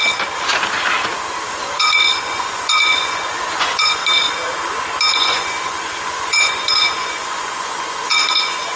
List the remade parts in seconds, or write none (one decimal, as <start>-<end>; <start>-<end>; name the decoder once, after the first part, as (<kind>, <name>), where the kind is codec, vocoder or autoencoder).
1.5-4.0 (vocoder, Vocos); 5.1-8.8